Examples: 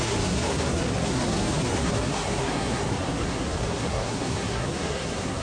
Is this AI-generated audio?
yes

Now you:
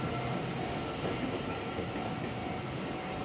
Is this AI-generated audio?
no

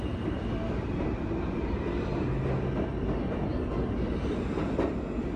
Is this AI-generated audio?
no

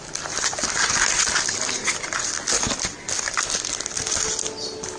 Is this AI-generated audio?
no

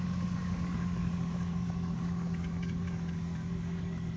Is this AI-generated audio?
yes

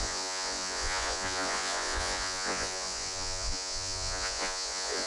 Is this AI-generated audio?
yes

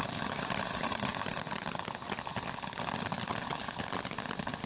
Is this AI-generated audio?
no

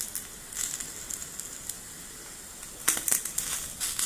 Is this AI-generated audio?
no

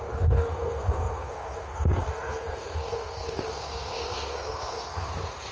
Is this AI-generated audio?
yes